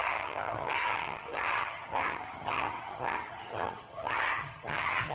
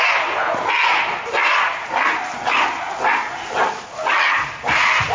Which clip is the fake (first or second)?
first